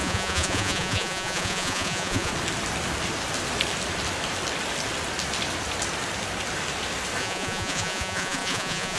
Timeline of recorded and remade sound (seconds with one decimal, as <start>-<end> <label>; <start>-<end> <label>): 0.0-2.3 remade; 2.3-7.2 recorded; 7.2-9.0 remade